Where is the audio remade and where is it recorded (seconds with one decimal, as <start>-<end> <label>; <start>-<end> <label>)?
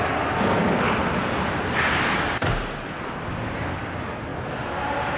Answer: 0.0-5.2 recorded